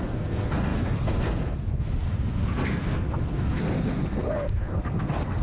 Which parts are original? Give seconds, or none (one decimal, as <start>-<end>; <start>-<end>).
none